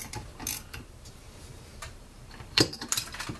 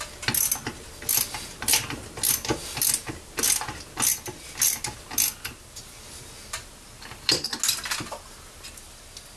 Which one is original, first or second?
second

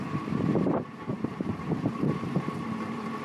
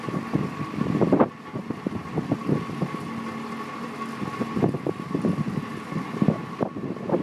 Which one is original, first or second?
second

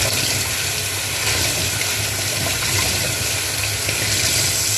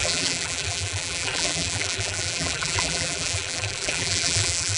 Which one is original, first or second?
first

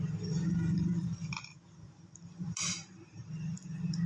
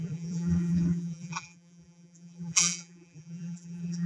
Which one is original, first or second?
first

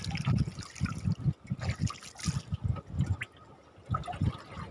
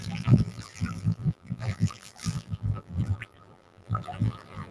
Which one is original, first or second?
first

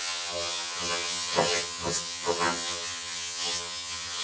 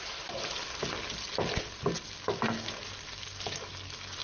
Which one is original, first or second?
second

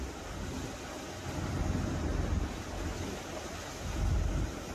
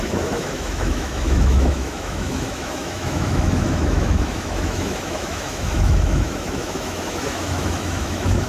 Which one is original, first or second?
first